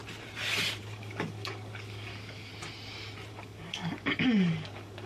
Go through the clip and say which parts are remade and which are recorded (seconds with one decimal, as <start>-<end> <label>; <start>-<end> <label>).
0.0-0.8 recorded; 0.8-2.5 remade; 2.5-3.3 recorded; 3.3-5.1 remade

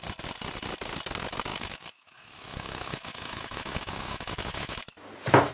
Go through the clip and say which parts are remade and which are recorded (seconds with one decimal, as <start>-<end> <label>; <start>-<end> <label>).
0.0-1.5 recorded; 1.5-4.8 remade; 4.8-5.5 recorded

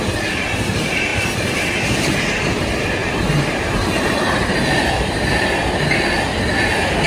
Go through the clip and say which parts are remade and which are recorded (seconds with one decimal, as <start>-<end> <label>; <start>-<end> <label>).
0.0-1.1 recorded; 1.1-2.2 remade; 2.2-3.0 recorded; 3.0-5.3 remade; 5.3-7.1 recorded

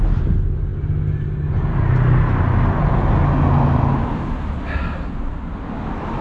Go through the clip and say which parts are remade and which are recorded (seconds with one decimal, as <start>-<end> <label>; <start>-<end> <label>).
0.0-6.2 recorded

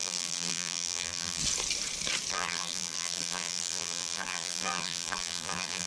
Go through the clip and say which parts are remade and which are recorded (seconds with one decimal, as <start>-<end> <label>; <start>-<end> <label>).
0.0-1.4 remade; 1.4-2.3 recorded; 2.3-5.9 remade

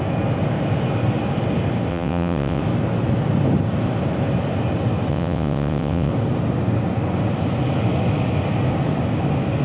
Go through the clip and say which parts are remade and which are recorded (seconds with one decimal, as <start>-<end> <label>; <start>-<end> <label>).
0.0-1.9 recorded; 1.9-2.6 remade; 2.6-5.1 recorded; 5.1-6.1 remade; 6.1-9.6 recorded

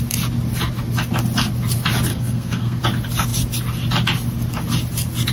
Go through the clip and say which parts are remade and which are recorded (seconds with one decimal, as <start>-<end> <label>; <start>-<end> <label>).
0.0-2.1 recorded; 2.1-2.8 remade; 2.8-5.3 recorded

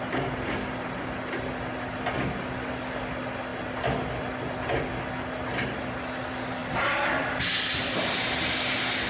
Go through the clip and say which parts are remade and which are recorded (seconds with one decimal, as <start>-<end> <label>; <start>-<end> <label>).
0.0-9.1 recorded